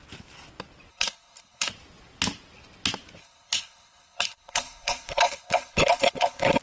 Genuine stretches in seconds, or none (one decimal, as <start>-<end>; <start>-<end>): 0.0-0.9; 1.7-3.2